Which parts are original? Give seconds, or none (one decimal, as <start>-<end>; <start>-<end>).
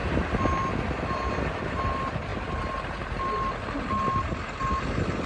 0.0-5.3